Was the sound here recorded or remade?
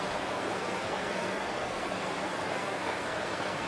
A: remade